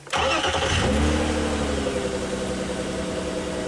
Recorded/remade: recorded